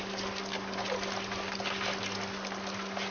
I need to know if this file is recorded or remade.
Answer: recorded